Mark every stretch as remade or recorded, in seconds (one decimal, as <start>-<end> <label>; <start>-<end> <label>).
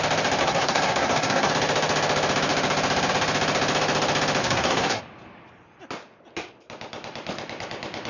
0.0-0.4 recorded; 0.4-1.5 remade; 1.5-4.4 recorded; 4.4-5.0 remade; 5.0-8.1 recorded